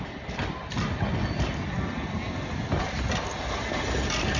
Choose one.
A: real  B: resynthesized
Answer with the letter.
A